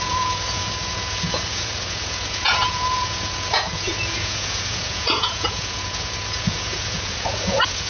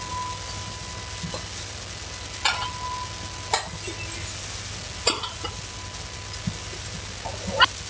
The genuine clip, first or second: second